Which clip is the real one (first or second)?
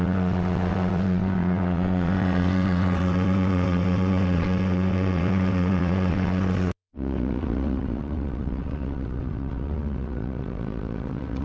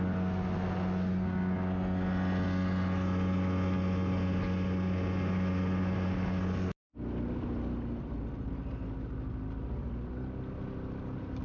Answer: second